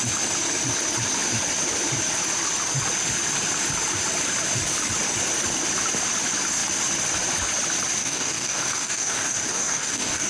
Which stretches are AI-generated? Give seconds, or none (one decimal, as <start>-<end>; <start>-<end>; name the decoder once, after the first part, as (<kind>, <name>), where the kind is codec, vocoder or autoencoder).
8.0-10.3 (codec, DAC)